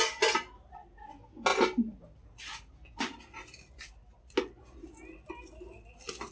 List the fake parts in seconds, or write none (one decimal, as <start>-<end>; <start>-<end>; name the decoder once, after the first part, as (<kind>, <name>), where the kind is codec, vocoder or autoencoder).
none